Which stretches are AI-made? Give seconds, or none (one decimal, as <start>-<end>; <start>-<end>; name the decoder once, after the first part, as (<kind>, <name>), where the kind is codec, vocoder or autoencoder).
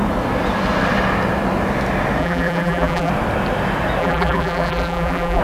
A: 2.2-3.1 (vocoder, BigVGAN v2); 4.0-5.4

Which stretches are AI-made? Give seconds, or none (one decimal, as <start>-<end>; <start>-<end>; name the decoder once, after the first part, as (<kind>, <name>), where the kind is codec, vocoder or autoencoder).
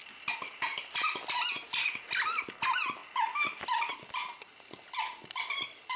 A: none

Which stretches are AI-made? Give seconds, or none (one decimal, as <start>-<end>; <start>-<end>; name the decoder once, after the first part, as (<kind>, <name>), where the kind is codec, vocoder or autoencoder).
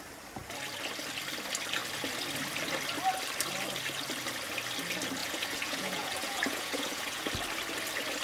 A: 5.2-7.3 (vocoder, Vocos)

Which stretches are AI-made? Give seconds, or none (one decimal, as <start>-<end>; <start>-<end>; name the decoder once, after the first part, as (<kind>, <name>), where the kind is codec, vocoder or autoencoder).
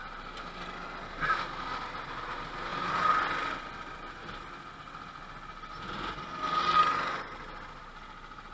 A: none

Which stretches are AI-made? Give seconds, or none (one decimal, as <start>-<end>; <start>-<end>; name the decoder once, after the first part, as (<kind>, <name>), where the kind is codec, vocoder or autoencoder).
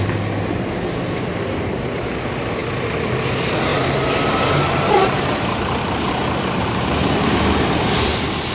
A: 3.7-7.3 (vocoder, BigVGAN v2)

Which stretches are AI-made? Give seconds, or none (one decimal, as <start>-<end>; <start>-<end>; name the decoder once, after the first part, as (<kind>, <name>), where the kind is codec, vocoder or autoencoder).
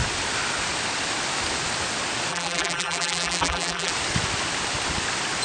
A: 2.3-3.9 (vocoder, BigVGAN v2)